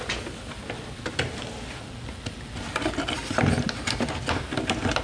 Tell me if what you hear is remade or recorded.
recorded